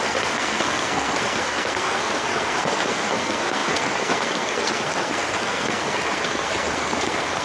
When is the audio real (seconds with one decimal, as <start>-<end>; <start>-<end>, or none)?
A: none